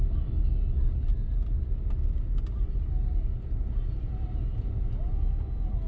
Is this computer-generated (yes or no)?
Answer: no